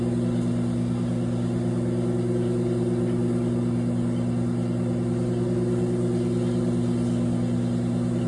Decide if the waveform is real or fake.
real